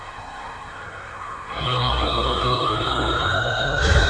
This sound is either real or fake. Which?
fake